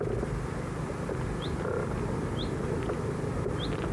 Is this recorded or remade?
recorded